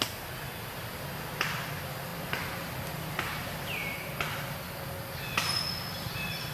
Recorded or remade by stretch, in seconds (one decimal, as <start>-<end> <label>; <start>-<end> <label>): 0.0-6.5 recorded